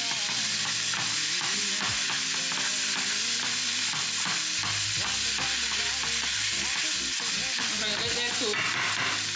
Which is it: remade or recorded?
recorded